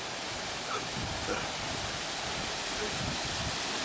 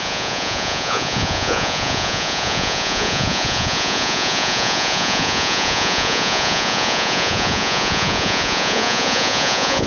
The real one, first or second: first